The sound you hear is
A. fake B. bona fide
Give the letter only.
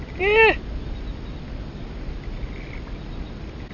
B